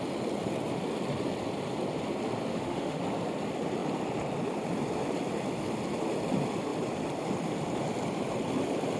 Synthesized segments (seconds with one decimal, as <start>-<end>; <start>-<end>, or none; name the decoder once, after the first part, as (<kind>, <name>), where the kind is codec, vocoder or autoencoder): 2.5-3.0 (autoencoder, DAC-VAE)